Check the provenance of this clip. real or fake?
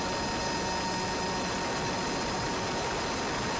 real